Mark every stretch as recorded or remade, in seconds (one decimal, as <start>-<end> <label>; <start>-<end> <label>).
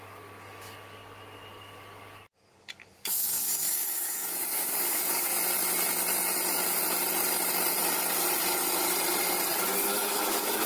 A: 0.0-1.0 remade; 1.0-1.5 recorded; 1.5-5.3 remade; 5.3-9.8 recorded; 9.8-10.7 remade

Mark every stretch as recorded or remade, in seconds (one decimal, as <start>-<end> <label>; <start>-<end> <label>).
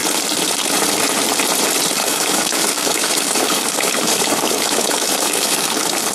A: 0.0-2.0 recorded; 2.0-6.1 remade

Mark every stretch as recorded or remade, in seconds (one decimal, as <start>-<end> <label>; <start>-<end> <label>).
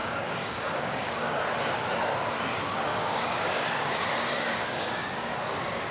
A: 0.0-1.4 remade; 1.4-2.5 recorded; 2.5-5.9 remade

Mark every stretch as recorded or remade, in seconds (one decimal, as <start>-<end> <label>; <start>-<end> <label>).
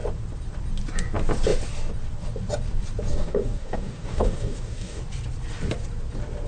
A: 0.0-3.1 recorded; 3.1-5.0 remade; 5.0-6.5 recorded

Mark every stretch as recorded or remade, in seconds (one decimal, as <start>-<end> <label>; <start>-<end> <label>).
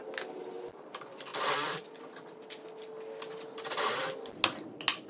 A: 0.0-5.1 recorded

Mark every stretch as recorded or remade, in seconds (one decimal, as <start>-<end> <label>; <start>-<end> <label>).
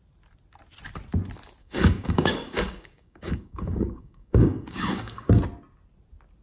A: 0.0-1.6 recorded; 1.6-5.4 remade; 5.4-6.4 recorded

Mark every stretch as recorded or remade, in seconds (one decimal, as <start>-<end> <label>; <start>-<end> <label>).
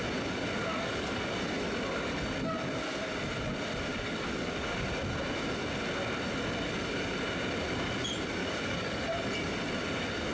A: 0.0-0.7 recorded; 0.7-1.4 remade; 1.4-3.9 recorded; 3.9-4.9 remade; 4.9-8.4 recorded; 8.4-9.0 remade; 9.0-10.3 recorded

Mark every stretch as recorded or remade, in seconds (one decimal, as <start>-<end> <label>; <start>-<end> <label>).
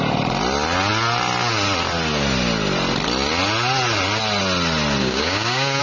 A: 0.0-5.0 recorded; 5.0-5.8 remade